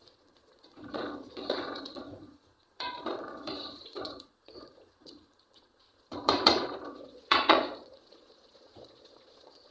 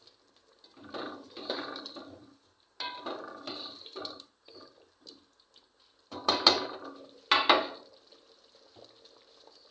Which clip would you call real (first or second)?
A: second